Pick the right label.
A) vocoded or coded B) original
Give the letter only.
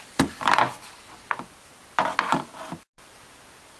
B